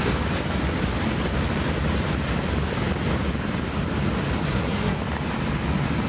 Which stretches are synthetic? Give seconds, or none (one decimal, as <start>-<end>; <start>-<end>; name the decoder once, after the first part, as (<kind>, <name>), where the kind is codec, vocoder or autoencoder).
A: 4.4-5.0 (codec, SNAC)